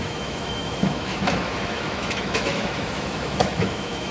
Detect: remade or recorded remade